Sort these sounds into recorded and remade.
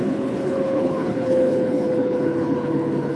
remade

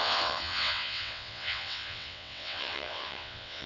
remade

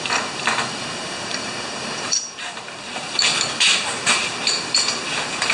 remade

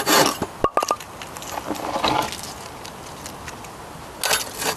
recorded